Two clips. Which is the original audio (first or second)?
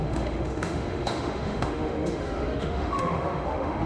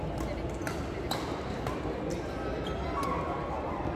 second